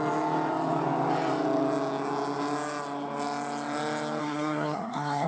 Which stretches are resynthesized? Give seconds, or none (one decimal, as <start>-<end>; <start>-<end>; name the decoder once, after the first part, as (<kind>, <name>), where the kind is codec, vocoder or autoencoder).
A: 4.2-5.3 (codec, SNAC)